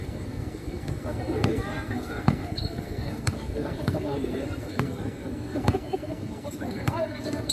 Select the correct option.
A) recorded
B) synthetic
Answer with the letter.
B